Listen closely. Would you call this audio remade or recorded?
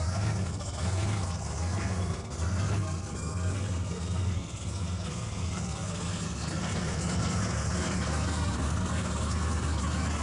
remade